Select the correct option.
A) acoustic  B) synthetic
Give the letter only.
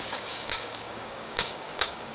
B